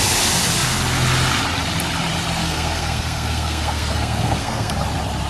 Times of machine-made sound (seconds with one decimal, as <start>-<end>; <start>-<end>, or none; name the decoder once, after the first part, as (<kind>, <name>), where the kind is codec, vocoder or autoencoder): 2.4-4.7 (codec, SNAC)